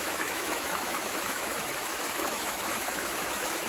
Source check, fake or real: fake